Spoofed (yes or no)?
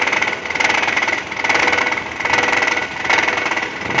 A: no